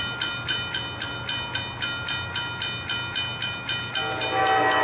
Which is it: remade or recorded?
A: recorded